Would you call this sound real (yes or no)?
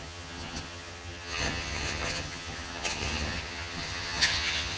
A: no